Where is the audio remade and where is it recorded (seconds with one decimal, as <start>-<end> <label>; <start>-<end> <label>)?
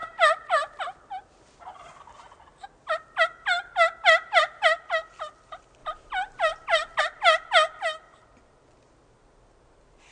0.0-0.8 remade; 0.8-5.8 recorded; 5.8-7.0 remade; 7.0-10.1 recorded